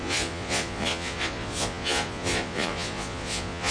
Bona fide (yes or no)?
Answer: no